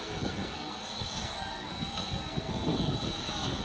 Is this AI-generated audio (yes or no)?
yes